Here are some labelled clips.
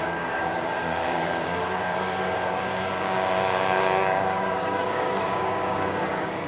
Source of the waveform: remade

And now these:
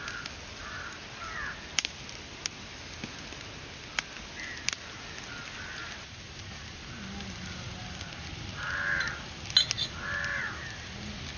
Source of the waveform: recorded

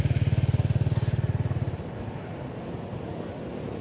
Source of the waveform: recorded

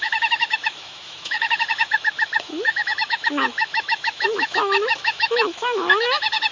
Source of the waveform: remade